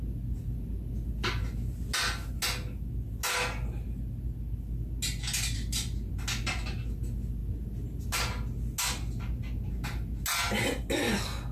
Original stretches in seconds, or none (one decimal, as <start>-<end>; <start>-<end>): 0.0-11.5